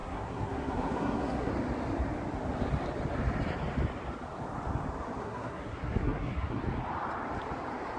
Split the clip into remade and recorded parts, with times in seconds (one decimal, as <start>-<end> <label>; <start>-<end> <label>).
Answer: 0.0-1.5 remade; 1.5-5.2 recorded; 5.2-6.6 remade; 6.6-8.0 recorded